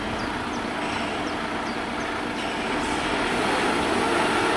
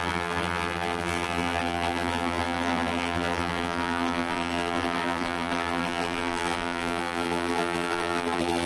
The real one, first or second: first